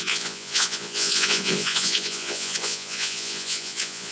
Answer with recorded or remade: remade